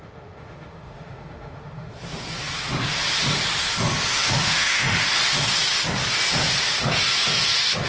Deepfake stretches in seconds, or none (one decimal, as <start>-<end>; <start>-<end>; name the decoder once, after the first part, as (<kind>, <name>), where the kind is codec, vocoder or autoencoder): 0.0-1.9 (autoencoder, DAC-VAE); 4.1-5.2